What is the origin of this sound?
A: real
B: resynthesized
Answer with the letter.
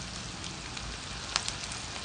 A